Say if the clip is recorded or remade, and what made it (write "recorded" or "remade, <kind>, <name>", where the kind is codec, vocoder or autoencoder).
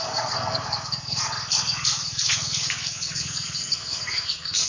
remade, codec, SNAC